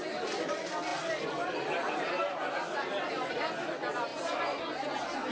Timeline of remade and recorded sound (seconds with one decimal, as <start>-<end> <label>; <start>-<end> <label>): 0.0-5.3 recorded